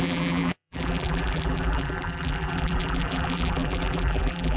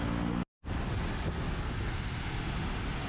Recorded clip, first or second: second